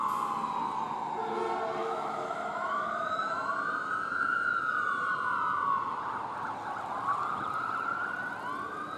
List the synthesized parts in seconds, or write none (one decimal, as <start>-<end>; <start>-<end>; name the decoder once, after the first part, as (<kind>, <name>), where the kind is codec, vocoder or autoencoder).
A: 1.8-3.3 (autoencoder, DAC-VAE)